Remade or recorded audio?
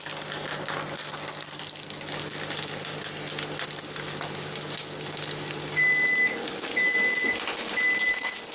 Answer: recorded